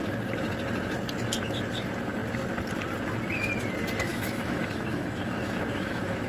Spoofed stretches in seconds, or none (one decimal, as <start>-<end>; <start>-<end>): 4.1-6.3